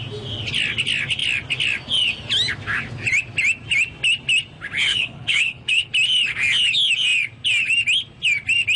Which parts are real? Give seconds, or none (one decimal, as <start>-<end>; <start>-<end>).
0.0-4.9; 5.9-8.8